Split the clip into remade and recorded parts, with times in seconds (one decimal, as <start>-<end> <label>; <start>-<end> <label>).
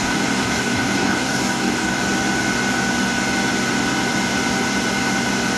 0.0-2.0 remade; 2.0-5.6 recorded